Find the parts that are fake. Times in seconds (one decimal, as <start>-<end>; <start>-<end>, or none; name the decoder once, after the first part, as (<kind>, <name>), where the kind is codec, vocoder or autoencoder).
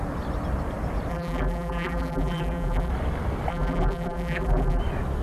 1.1-2.9 (vocoder, BigVGAN v2); 3.5-4.8